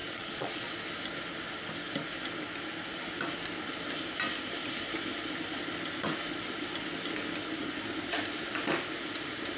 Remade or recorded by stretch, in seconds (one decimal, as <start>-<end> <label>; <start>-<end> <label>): 0.0-0.7 remade; 0.7-9.6 recorded